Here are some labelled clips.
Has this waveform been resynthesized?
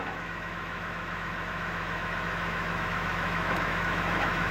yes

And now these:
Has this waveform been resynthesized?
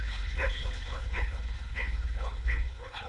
yes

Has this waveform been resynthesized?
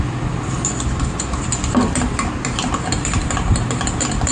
no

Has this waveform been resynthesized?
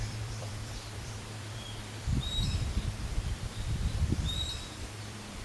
yes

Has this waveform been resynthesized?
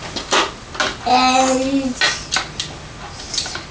no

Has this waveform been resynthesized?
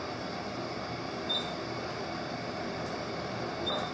no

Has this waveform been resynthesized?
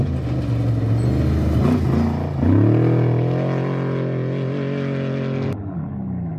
no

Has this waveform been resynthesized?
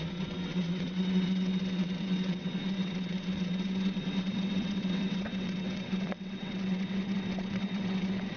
yes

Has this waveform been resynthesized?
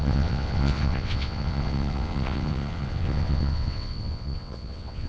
yes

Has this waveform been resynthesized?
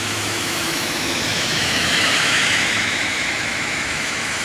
yes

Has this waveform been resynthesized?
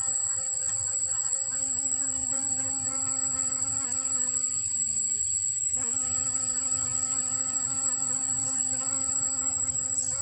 no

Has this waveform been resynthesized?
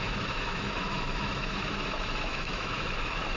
yes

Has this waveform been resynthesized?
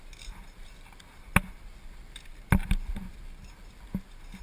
no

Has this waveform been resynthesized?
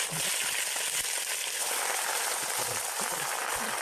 no